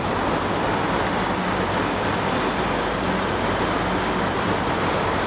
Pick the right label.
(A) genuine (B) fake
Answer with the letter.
A